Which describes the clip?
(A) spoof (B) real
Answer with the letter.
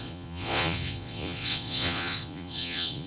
A